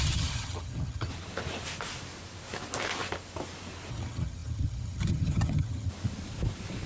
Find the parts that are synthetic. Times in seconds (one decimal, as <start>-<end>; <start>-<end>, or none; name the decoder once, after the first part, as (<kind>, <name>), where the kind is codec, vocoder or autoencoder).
0.0-1.1 (vocoder, HiFi-GAN); 3.9-5.9